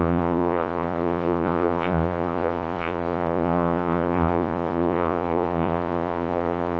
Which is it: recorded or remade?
remade